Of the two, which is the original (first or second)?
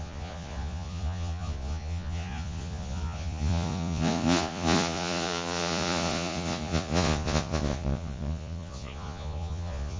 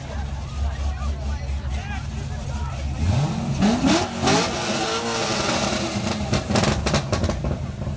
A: second